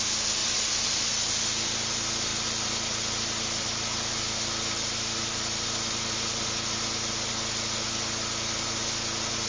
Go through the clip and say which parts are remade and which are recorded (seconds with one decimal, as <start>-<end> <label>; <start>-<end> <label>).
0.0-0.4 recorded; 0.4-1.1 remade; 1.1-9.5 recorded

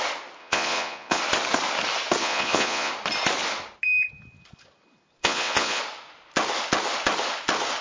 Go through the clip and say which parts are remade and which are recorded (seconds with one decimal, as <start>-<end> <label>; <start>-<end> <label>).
0.0-0.4 recorded; 0.4-1.2 remade; 1.2-2.2 recorded; 2.2-2.9 remade; 2.9-5.2 recorded; 5.2-5.8 remade; 5.8-7.8 recorded

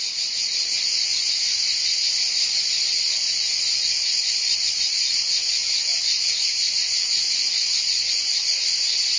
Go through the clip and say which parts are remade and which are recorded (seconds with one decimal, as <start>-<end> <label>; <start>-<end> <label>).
0.0-1.9 remade; 1.9-2.9 recorded; 2.9-9.2 remade